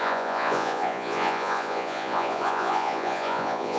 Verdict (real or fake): fake